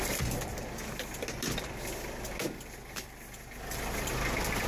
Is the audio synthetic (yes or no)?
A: yes